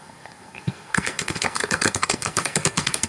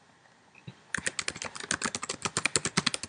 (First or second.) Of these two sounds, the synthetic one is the first